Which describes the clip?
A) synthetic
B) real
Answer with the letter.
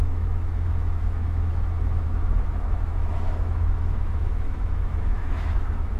A